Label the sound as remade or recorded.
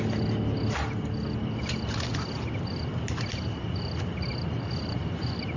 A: recorded